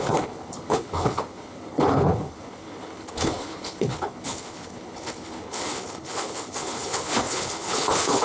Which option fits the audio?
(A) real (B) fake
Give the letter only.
B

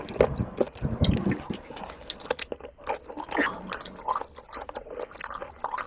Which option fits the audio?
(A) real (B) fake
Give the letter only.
A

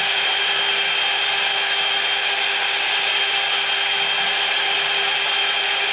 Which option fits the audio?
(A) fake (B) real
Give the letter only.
B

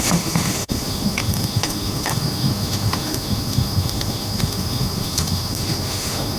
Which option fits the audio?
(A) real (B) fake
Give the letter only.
B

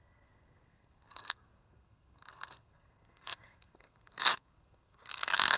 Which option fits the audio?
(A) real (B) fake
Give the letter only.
B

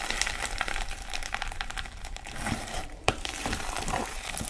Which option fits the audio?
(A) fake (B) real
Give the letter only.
A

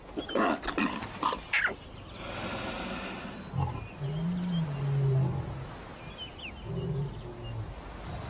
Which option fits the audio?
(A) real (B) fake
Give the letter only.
A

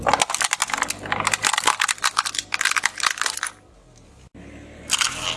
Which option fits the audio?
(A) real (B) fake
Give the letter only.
A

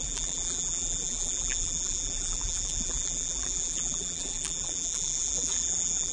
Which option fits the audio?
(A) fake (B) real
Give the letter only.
A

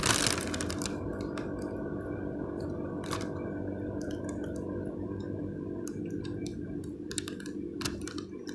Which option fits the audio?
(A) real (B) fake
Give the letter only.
A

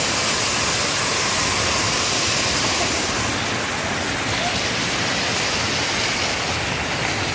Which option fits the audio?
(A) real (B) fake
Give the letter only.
A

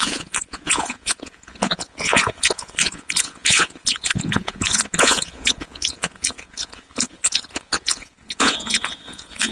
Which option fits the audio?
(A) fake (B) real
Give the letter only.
A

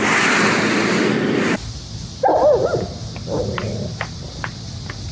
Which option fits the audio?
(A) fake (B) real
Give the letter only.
B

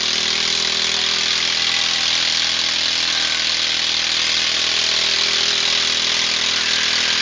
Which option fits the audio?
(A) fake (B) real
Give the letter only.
B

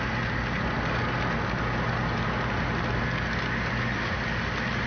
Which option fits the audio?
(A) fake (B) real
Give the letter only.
B